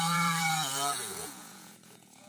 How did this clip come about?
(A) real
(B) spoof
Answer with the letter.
B